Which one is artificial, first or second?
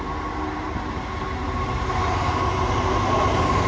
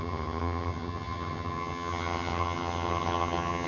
second